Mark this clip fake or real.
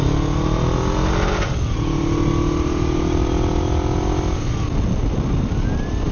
real